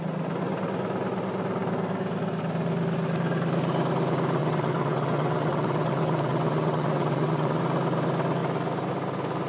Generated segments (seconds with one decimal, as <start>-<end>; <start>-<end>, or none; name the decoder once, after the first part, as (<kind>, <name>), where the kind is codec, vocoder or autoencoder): 4.4-7.6 (vocoder, WaveNeXt)